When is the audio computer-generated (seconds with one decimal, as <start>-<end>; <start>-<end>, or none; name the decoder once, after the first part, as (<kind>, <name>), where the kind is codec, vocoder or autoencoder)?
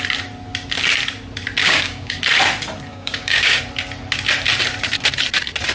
1.6-2.2 (codec, DAC); 2.9-3.6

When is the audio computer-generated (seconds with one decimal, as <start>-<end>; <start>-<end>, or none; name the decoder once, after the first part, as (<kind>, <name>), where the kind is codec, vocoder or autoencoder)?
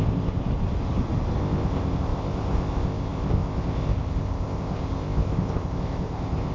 0.0-0.4 (codec, ZipCodec); 1.4-6.5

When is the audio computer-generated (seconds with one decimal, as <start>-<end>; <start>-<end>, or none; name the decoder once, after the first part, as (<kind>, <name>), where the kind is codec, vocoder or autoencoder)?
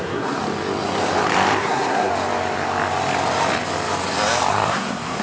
0.0-0.4 (codec, SNAC); 1.6-2.1; 4.5-5.2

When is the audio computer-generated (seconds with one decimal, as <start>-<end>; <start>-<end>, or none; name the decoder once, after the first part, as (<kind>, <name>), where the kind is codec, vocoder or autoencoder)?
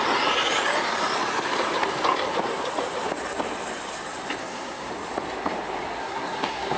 4.4-4.9 (codec, SNAC); 6.0-6.8